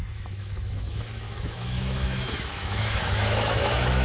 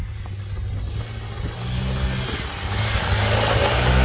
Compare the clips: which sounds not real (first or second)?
first